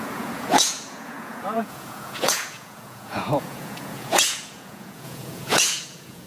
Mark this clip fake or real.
fake